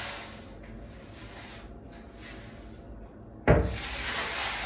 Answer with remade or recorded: recorded